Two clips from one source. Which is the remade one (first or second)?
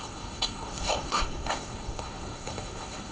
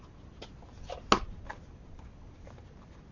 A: first